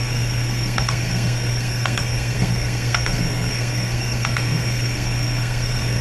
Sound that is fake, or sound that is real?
fake